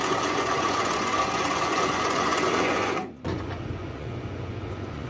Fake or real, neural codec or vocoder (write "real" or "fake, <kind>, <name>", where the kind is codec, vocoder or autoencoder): fake, vocoder, Vocos